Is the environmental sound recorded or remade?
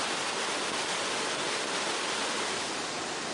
recorded